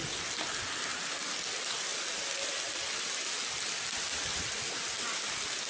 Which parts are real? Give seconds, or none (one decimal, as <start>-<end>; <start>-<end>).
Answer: 0.0-5.7